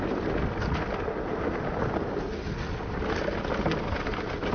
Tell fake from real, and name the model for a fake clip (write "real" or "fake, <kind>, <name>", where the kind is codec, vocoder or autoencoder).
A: real